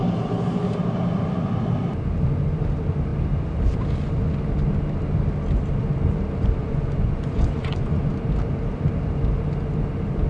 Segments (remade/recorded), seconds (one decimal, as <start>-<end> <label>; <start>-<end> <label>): 0.0-6.6 recorded; 6.6-8.1 remade; 8.1-10.3 recorded